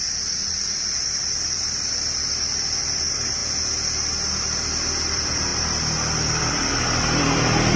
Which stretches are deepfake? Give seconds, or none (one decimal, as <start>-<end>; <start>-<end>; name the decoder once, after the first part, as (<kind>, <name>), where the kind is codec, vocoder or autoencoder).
0.0-3.4 (vocoder, BigVGAN v2); 4.3-5.5; 6.5-7.8